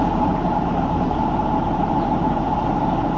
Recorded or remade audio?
remade